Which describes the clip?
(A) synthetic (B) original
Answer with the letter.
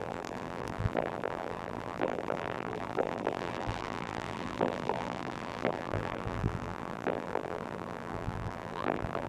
A